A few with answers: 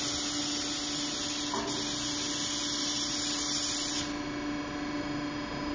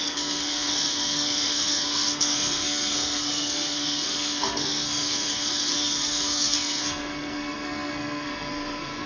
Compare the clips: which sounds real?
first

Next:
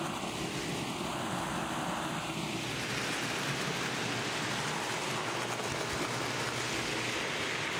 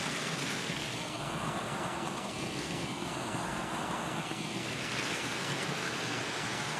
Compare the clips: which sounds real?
first